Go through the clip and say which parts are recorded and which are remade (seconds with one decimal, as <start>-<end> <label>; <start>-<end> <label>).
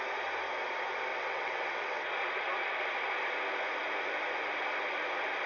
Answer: 0.0-1.1 recorded; 1.1-2.1 remade; 2.1-5.5 recorded